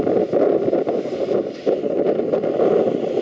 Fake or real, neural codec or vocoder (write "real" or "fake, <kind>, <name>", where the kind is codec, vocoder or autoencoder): real